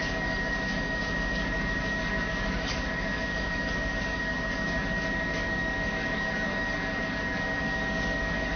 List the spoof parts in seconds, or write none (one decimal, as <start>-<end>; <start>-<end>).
0.0-8.6